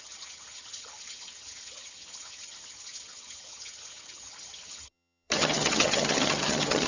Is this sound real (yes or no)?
no